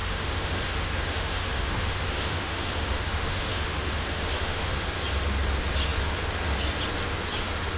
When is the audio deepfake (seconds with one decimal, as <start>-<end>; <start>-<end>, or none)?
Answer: 0.0-4.7